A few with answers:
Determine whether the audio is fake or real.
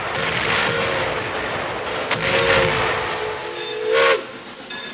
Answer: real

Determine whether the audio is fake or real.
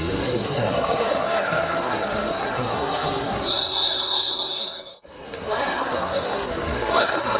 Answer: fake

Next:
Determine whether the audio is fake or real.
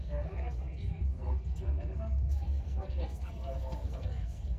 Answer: fake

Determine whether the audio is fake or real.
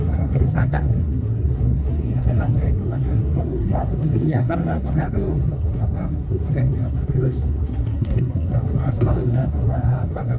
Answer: fake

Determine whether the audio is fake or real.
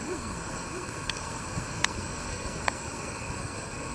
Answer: fake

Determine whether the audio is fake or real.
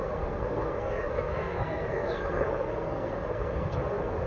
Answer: fake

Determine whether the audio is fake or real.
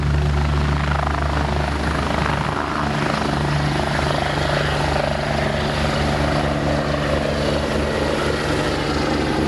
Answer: real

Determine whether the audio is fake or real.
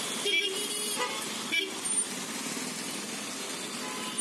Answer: real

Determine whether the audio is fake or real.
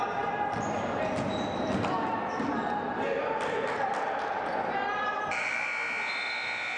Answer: real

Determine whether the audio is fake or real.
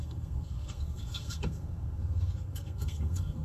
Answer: fake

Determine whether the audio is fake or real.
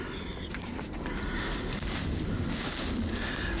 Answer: real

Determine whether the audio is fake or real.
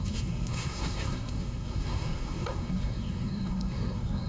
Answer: fake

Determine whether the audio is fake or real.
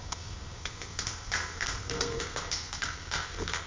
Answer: fake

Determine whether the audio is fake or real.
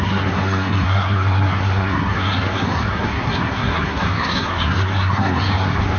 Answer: fake